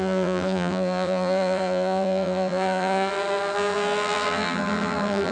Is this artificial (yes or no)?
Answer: yes